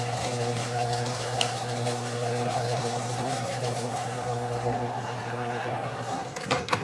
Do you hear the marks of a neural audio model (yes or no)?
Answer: yes